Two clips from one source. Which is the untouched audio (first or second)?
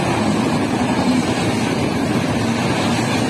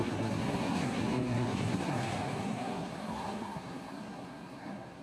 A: first